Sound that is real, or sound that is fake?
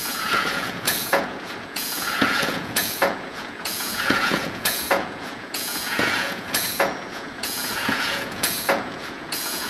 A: fake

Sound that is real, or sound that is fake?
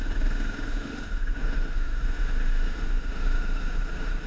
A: fake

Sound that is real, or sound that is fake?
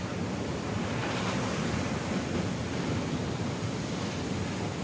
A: real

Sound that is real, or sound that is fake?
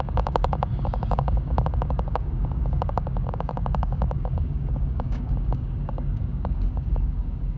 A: fake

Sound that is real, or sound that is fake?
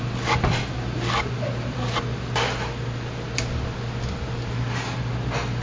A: real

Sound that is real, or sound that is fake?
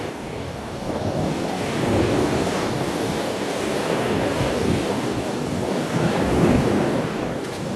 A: fake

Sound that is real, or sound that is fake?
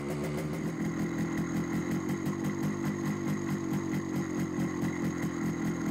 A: real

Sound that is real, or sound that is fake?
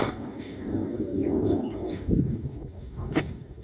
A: fake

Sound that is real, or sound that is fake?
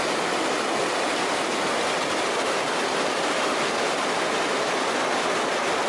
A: real